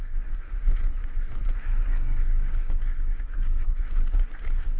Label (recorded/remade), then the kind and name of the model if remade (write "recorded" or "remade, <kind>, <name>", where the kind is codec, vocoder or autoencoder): remade, codec, SNAC